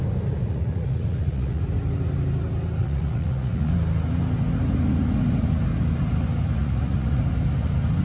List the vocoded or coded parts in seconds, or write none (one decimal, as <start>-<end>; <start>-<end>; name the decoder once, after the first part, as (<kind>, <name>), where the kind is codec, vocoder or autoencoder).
0.4-1.6 (vocoder, Vocos); 2.8-3.7; 6.6-7.2